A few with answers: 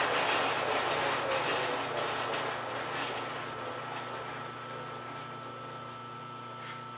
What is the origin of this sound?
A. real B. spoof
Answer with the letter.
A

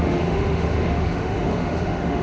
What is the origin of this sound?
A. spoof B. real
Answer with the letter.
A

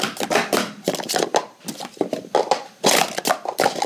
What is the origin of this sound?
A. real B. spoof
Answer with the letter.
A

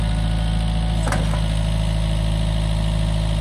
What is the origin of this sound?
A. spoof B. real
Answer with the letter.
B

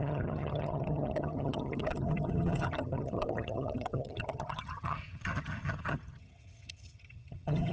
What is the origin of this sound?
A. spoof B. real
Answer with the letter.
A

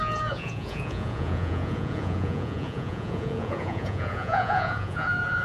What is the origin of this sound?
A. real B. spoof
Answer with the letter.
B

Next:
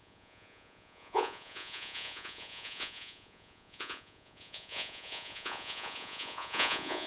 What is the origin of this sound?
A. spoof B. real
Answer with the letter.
A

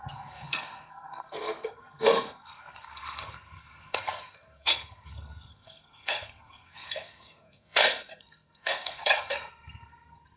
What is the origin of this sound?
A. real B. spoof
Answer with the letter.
B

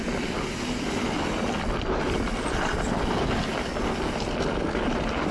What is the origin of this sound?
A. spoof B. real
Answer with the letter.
B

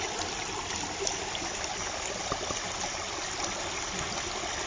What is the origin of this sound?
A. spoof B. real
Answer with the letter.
B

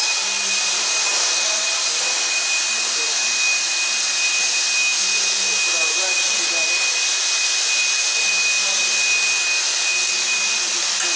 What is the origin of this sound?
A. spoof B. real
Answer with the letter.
B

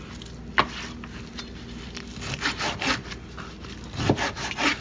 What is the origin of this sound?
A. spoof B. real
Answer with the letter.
B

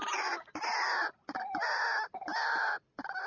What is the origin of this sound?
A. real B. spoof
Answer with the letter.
A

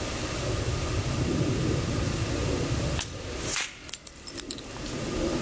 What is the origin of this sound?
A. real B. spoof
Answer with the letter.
A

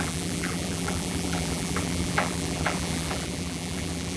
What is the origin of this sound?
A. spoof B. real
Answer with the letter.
A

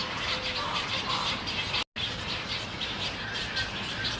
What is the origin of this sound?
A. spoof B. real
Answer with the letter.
B